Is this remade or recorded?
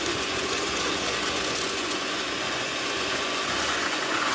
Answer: remade